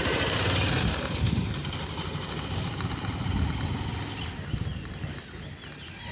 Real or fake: real